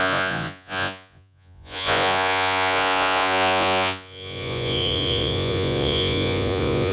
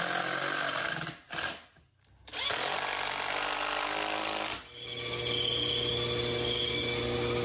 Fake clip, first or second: first